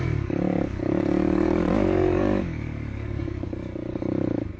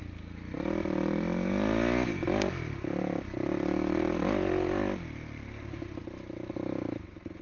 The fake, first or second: first